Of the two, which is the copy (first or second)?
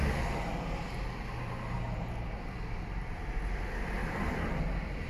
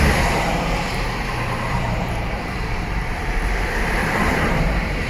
second